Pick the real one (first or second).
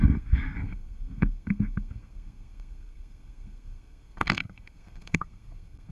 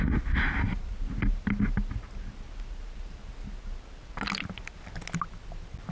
second